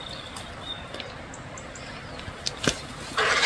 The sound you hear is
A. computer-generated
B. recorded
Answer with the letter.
B